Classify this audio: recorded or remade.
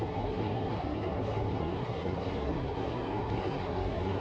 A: remade